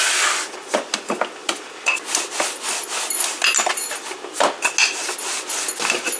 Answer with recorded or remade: recorded